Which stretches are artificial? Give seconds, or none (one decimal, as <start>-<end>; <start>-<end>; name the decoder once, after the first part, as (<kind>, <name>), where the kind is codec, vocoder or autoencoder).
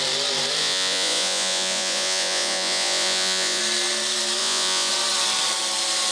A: 0.6-3.6 (vocoder, Vocos); 4.4-4.9